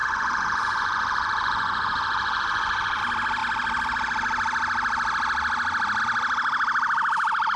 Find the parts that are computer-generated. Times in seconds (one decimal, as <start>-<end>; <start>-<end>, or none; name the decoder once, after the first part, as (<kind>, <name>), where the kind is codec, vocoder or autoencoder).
0.0-3.0 (vocoder, Vocos)